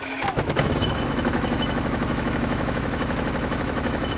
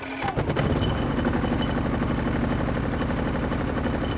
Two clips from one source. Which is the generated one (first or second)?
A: first